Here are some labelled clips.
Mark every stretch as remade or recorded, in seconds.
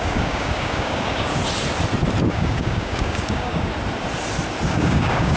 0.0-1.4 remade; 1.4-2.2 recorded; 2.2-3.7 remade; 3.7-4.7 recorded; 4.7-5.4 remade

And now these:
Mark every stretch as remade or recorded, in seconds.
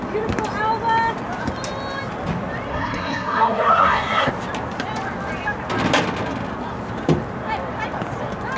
0.0-2.7 recorded; 2.7-4.3 remade; 4.3-8.6 recorded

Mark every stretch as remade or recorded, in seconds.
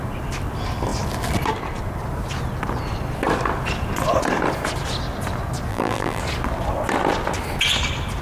0.0-5.7 recorded; 5.7-6.2 remade; 6.2-8.2 recorded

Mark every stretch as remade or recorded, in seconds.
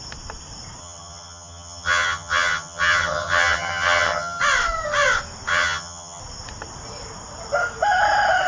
0.0-0.8 recorded; 0.8-4.4 remade; 4.4-5.5 recorded; 5.5-6.2 remade; 6.2-8.5 recorded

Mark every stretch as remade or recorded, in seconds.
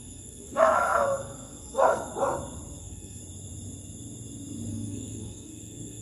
0.0-2.1 remade; 2.1-2.8 recorded; 2.8-3.2 remade; 3.2-4.7 recorded; 4.7-6.0 remade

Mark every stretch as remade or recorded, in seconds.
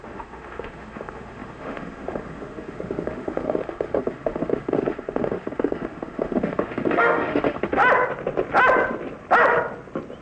0.0-7.8 remade; 7.8-10.2 recorded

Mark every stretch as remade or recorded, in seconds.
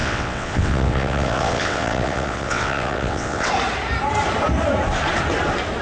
0.0-3.5 remade; 3.5-5.8 recorded